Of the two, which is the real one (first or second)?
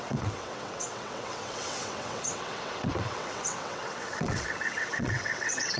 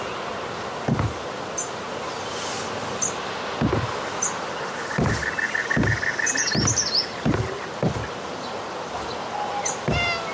second